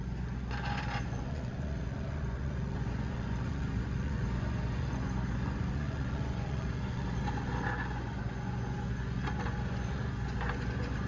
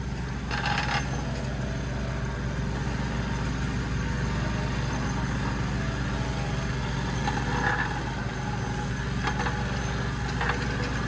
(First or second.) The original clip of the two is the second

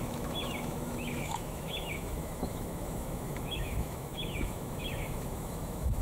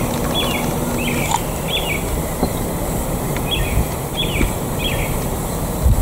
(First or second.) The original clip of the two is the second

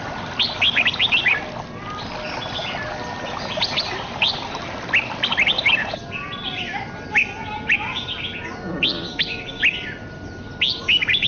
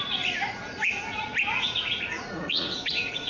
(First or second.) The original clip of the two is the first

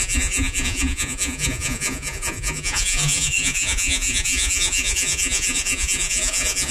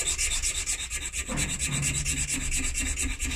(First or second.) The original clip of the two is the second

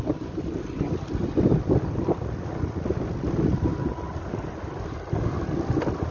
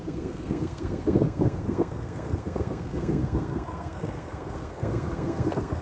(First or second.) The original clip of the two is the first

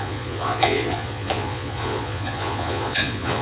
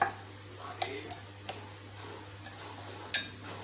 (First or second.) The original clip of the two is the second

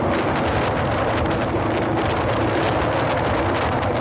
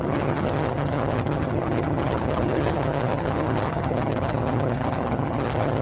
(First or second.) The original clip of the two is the first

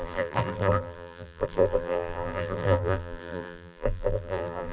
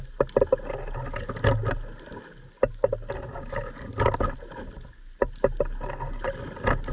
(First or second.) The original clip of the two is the second